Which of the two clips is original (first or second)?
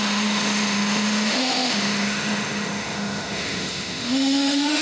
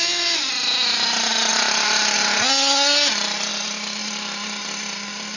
second